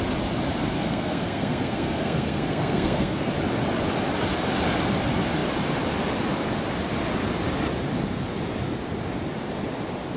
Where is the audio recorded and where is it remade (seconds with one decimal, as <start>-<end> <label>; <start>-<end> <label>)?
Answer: 0.0-0.8 recorded; 0.8-3.3 remade; 3.3-10.2 recorded